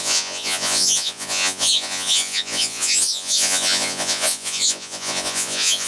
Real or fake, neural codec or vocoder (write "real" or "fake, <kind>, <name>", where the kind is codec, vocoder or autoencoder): fake, vocoder, Vocos